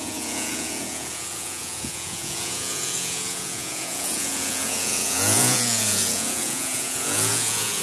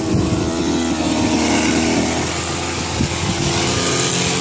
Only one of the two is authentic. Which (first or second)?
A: second